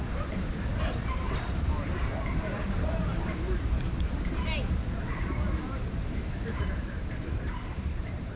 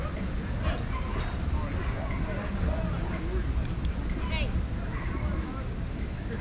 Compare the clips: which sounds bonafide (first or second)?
second